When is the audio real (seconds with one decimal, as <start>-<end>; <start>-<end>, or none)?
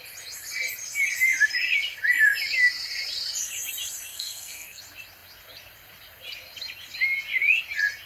0.0-4.1; 4.8-8.1